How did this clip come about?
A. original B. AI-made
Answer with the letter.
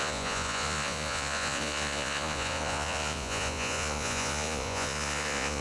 B